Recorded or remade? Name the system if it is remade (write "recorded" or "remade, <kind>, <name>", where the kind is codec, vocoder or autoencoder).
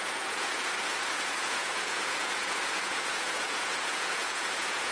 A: remade, vocoder, Vocos